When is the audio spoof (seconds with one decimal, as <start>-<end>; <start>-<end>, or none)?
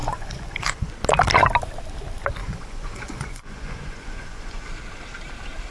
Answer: 0.0-0.9; 2.4-4.7